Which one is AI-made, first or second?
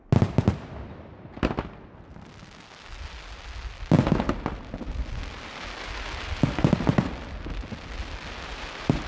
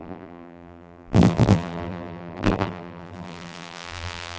second